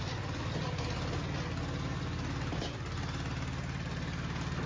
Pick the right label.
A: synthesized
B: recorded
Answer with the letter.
B